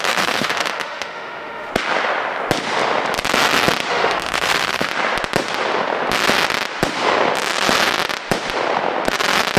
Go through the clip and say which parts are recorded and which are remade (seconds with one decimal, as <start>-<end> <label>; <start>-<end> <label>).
0.0-1.7 remade; 1.7-3.9 recorded; 3.9-4.9 remade; 4.9-9.6 recorded